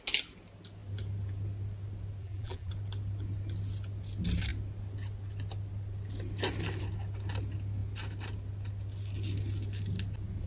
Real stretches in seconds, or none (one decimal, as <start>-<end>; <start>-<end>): 0.0-2.2; 2.7-10.5